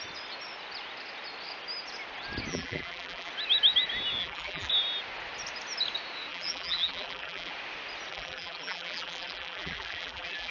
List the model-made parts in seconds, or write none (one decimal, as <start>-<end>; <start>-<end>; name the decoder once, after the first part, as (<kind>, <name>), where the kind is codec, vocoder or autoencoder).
2.5-3.3 (vocoder, BigVGAN v2); 4.2-4.7; 6.3-7.5; 8.1-10.5